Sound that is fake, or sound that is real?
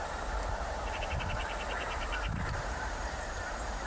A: fake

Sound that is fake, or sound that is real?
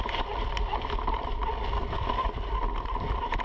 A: fake